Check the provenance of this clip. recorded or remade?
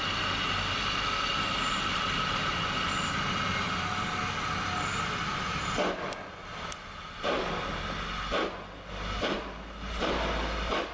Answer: recorded